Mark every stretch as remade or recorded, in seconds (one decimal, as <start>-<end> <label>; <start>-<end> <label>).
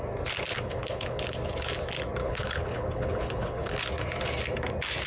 0.0-0.5 recorded; 0.5-1.2 remade; 1.2-2.2 recorded; 2.2-3.8 remade; 3.8-5.1 recorded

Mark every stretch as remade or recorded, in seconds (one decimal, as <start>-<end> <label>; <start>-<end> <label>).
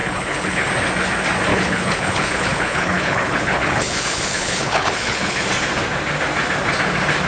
0.0-0.7 remade; 0.7-1.5 recorded; 1.5-5.5 remade; 5.5-7.3 recorded